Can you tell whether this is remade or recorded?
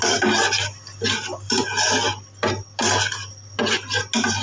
recorded